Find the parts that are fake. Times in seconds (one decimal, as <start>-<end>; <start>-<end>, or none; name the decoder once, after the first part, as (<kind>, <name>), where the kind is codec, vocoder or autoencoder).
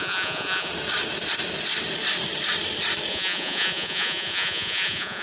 0.0-0.7 (vocoder, Vocos); 3.1-5.2